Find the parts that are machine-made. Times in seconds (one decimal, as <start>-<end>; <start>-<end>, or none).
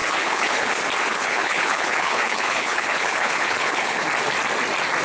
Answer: 0.0-0.7; 1.1-4.0